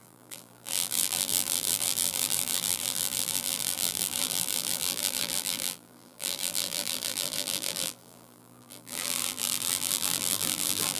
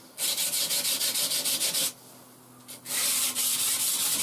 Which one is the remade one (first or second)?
first